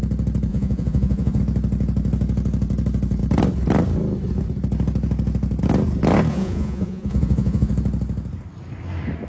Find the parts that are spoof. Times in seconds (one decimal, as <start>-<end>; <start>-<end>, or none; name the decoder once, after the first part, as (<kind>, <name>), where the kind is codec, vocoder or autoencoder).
0.5-1.4 (vocoder, Vocos); 6.3-7.7